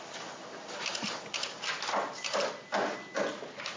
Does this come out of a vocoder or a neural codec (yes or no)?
no